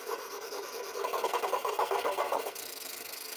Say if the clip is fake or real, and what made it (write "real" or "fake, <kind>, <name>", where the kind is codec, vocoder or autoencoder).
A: fake, codec, SNAC